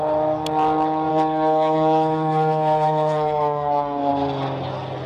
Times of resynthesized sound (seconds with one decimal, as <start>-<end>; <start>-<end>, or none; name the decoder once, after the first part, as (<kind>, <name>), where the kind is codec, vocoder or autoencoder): 1.1-4.1 (codec, SNAC)

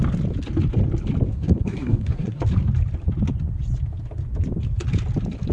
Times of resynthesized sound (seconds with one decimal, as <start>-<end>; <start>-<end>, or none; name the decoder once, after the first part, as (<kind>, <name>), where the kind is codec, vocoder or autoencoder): 1.3-2.4 (codec, SNAC)

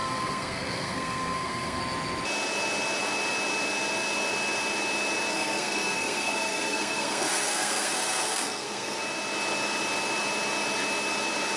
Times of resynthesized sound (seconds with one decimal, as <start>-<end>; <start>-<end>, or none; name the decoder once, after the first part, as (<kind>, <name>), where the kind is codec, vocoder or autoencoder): 0.0-1.8 (codec, SNAC); 5.3-9.0

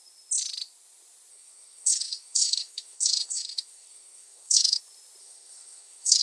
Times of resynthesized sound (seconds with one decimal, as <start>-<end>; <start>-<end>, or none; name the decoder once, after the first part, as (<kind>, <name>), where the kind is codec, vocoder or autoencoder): 1.3-4.8 (codec, SNAC); 5.2-6.2